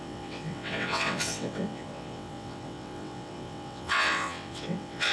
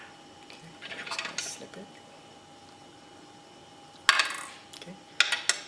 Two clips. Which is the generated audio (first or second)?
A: first